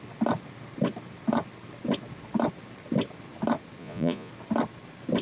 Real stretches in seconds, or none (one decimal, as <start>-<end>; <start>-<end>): 0.0-3.8; 4.3-5.2